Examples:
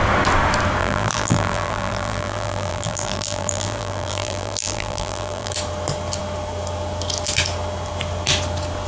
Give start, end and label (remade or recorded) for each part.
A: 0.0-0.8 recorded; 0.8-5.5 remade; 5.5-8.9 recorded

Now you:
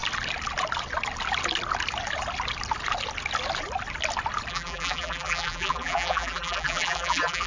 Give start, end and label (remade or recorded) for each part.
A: 0.0-4.5 recorded; 4.5-7.5 remade

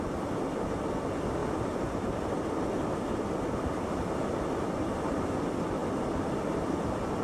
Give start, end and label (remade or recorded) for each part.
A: 0.0-7.2 recorded